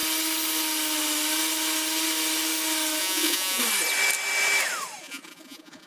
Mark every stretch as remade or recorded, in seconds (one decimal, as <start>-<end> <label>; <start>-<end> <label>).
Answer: 0.0-3.0 recorded; 3.0-3.6 remade; 3.6-5.0 recorded; 5.0-5.9 remade